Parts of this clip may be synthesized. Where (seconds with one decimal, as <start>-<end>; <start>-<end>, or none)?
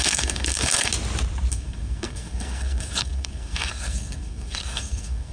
0.0-0.9; 1.5-5.3